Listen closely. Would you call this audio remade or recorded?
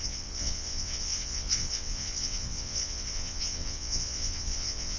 remade